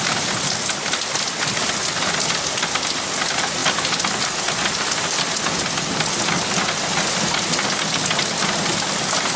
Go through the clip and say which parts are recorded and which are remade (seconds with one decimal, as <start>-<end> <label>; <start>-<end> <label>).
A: 0.0-9.4 recorded